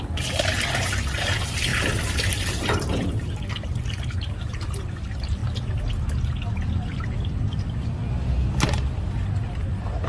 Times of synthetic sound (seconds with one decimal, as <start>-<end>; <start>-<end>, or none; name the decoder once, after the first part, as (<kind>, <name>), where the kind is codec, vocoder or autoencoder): 1.7-4.9 (vocoder, BigVGAN v2)